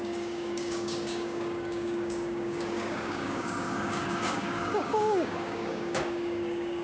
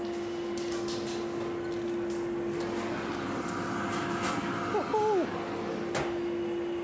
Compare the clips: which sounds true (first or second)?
second